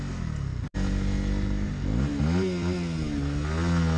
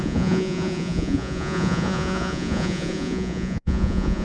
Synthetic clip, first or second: second